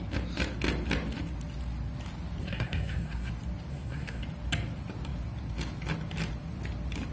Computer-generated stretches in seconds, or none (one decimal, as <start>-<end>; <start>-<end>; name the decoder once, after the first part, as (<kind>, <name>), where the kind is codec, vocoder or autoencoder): 2.4-3.3 (codec, SNAC); 3.7-4.2